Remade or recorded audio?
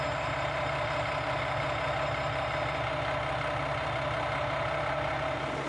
recorded